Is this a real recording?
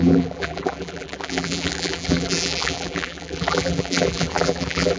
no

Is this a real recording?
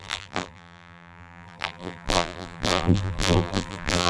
no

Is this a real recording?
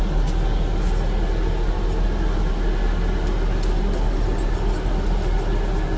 yes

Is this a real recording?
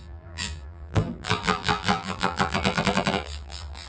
no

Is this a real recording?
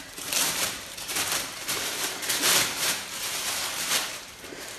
no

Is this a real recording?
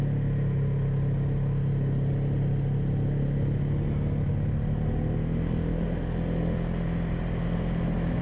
yes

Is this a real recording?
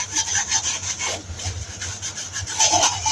no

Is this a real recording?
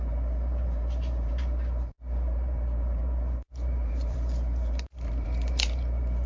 no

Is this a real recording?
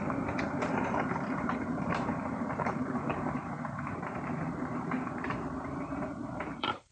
no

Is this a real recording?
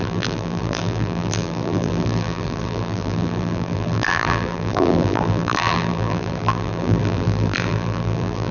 no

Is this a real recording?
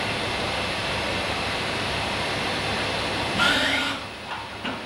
no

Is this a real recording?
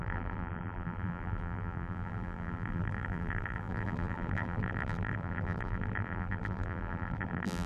no